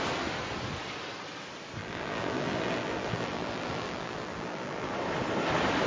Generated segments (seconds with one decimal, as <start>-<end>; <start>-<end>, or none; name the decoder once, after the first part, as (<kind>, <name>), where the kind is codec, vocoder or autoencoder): 1.8-4.9 (vocoder, BigVGAN v2)